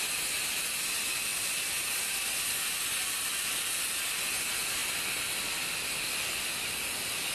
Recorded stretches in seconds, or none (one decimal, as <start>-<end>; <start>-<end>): 0.0-7.3